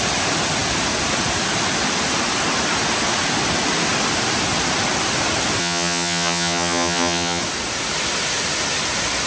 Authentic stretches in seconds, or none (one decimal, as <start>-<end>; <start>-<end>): 0.0-5.6; 7.4-9.3

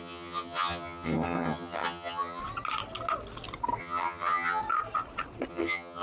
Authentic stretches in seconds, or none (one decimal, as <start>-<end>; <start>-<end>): 2.4-3.8; 4.6-5.5

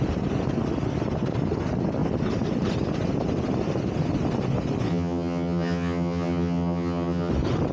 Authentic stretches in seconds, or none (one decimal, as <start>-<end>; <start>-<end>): 0.0-4.9; 7.3-7.7

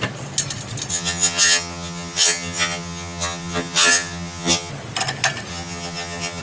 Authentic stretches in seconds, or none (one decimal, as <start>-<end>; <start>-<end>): 0.0-0.9; 4.7-5.5

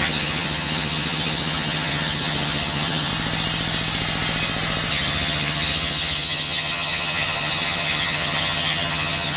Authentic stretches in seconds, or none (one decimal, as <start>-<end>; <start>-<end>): 3.1-4.9

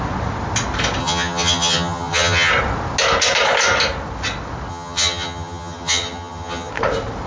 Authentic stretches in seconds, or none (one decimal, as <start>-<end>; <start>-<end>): 0.0-1.0; 2.5-4.7; 6.7-7.3

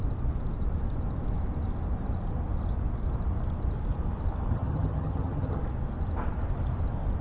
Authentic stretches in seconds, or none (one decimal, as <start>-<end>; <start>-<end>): 0.0-4.5; 5.6-7.2